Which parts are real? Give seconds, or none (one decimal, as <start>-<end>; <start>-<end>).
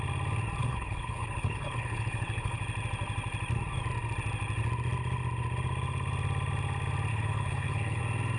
0.0-0.6; 2.6-7.1; 8.0-8.4